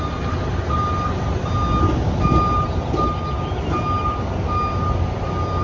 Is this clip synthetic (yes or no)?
no